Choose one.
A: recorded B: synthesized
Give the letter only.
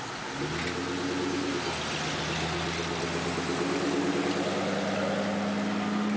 A